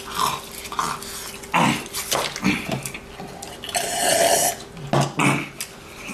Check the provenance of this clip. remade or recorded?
recorded